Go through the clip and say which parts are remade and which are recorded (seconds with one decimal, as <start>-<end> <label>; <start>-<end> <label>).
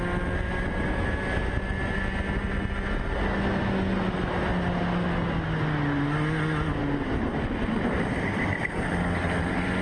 0.0-9.8 recorded